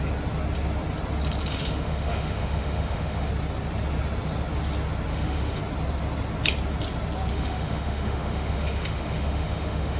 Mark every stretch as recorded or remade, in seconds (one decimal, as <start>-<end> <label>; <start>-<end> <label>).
0.0-1.5 recorded; 1.5-3.3 remade; 3.3-5.1 recorded; 5.1-5.6 remade; 5.6-7.3 recorded; 7.3-10.0 remade